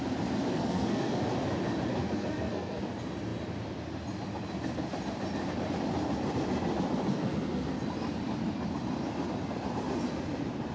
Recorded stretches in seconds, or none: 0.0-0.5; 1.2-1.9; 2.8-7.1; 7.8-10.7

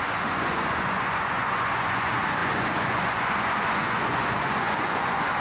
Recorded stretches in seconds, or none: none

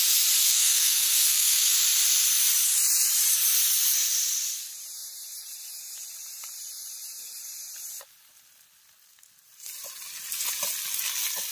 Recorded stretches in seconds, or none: 0.0-0.4; 1.7-11.5

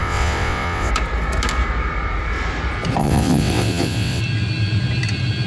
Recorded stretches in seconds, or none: 0.9-3.0; 4.2-5.5

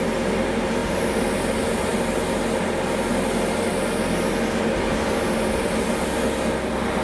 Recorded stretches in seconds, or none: 0.0-7.0

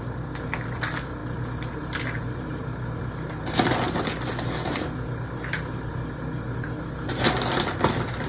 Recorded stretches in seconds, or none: 0.0-8.3